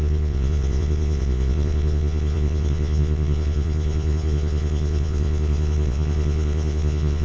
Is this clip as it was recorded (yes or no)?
no